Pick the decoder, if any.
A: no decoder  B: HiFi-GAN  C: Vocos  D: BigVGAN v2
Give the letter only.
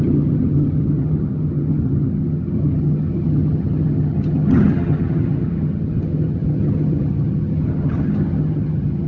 B